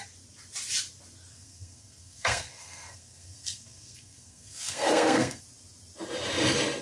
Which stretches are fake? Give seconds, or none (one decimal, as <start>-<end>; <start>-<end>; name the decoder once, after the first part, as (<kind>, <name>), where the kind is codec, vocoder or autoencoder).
1.3-5.4 (codec, SNAC)